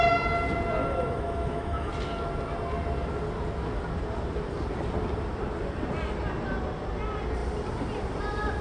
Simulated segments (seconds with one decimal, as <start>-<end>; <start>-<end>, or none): 0.8-1.9